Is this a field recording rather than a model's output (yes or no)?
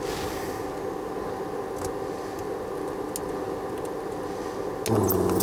yes